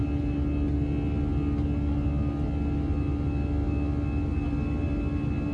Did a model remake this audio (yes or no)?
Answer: no